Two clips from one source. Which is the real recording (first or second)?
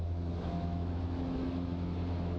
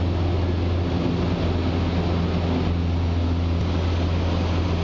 second